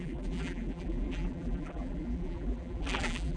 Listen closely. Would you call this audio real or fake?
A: fake